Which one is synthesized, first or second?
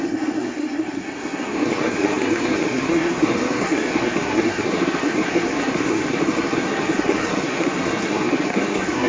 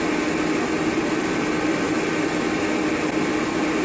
first